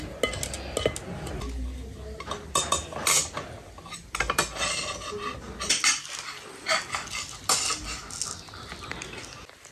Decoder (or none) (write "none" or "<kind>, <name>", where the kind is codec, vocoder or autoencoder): none